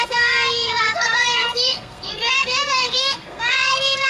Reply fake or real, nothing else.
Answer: fake